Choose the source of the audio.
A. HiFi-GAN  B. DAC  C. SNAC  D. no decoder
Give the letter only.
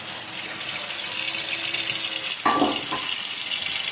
D